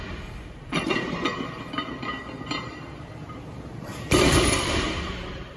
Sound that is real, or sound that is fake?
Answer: fake